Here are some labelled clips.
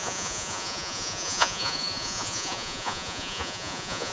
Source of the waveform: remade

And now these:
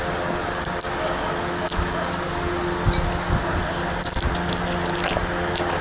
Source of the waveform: recorded